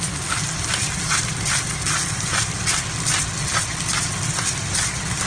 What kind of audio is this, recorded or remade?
recorded